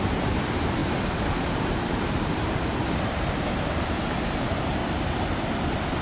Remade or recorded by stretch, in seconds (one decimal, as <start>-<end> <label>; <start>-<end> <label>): 0.0-4.8 remade; 4.8-6.0 recorded